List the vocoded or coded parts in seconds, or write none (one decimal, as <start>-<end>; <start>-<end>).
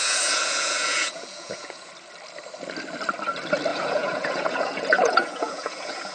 0.0-1.9; 3.7-6.1